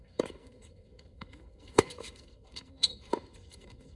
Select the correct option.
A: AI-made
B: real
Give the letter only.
A